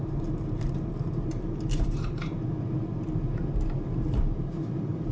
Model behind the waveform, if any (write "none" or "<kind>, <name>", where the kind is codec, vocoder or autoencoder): vocoder, BigVGAN v2